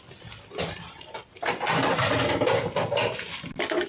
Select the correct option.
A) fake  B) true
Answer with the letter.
B